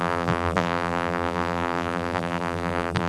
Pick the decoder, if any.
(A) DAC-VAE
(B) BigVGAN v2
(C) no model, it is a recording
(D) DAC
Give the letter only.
B